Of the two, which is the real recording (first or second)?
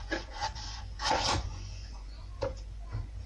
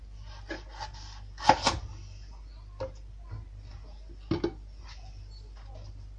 second